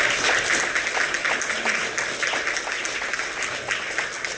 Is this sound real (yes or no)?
yes